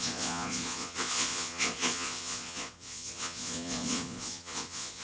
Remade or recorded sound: remade